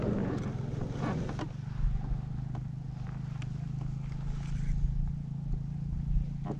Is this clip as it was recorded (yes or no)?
yes